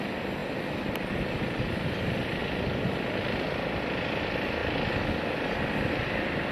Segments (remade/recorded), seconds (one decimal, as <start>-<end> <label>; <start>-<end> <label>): 0.0-0.4 recorded; 0.4-1.8 remade; 1.8-2.4 recorded; 2.4-3.8 remade; 3.8-4.6 recorded; 4.6-5.4 remade; 5.4-6.5 recorded